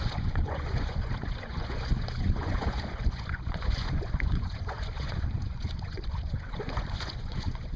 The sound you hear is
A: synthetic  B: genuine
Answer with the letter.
A